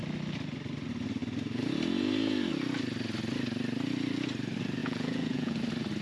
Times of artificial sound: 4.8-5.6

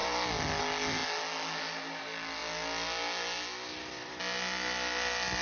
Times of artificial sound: none

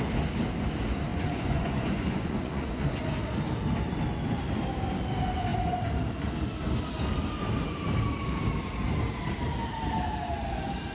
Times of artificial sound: 1.1-3.0

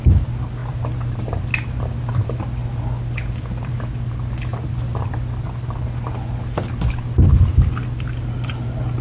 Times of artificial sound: none